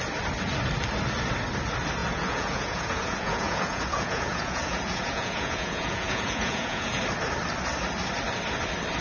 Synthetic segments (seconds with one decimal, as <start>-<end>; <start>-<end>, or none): 2.0-7.0